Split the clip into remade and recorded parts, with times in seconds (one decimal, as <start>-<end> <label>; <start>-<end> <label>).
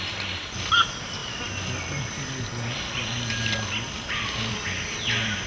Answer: 0.0-5.5 recorded